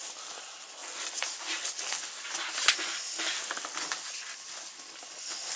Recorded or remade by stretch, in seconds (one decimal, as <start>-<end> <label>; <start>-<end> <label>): 0.0-5.6 recorded

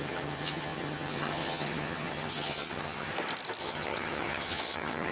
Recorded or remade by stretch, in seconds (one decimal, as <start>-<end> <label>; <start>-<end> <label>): 0.0-3.1 remade; 3.1-3.6 recorded; 3.6-5.1 remade

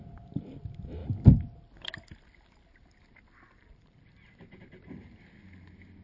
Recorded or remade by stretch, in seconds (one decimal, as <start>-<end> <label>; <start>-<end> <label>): 0.0-6.0 recorded

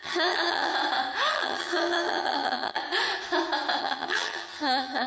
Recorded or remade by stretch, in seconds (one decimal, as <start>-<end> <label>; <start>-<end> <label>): 0.0-0.7 remade; 0.7-1.3 recorded; 1.3-2.8 remade; 2.8-3.8 recorded; 3.8-5.1 remade

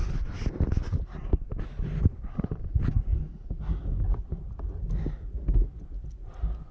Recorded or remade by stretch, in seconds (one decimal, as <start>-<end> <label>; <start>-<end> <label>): 0.0-6.7 recorded